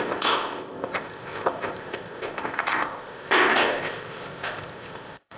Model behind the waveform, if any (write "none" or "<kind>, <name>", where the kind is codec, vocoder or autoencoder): codec, ZipCodec